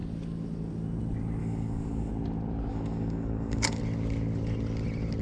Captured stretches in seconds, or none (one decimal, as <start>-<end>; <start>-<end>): 0.0-1.4; 2.1-2.7; 3.8-5.2